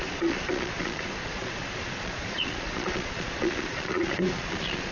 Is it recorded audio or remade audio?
remade